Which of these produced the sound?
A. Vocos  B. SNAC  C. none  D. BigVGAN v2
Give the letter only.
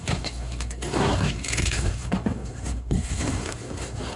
B